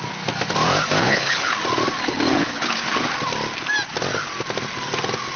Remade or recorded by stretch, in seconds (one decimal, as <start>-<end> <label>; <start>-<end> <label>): 0.0-1.0 recorded; 1.0-1.6 remade; 1.6-2.3 recorded; 2.3-3.0 remade; 3.0-5.4 recorded